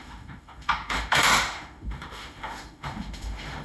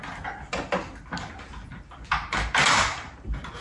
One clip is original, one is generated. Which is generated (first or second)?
first